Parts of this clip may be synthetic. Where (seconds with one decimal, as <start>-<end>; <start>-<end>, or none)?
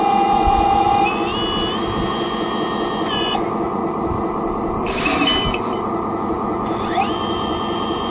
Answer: 0.0-1.3; 2.1-3.8; 6.2-8.1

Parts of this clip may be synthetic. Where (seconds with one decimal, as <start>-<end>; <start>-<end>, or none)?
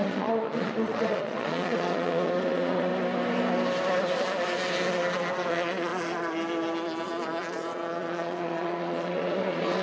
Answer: 0.0-2.9; 5.5-5.9; 7.0-9.8